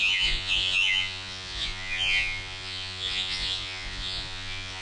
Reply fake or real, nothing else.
fake